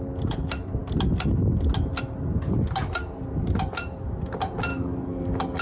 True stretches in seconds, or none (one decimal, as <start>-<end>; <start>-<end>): 0.0-4.7